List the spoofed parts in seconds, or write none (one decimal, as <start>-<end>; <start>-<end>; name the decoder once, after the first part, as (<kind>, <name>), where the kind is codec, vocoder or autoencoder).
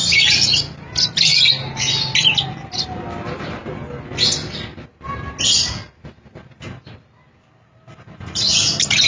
none